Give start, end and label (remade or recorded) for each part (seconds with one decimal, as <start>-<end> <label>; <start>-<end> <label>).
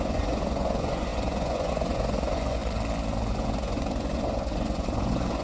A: 0.0-2.6 remade; 2.6-3.3 recorded; 3.3-5.4 remade